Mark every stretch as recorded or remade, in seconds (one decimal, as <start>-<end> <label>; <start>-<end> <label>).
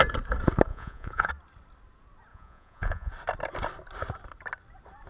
0.0-0.7 recorded; 0.7-1.3 remade; 1.3-2.3 recorded; 2.3-3.1 remade; 3.1-5.1 recorded